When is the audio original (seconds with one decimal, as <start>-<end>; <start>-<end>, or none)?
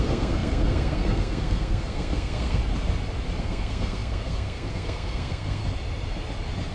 2.6-3.4; 5.6-6.7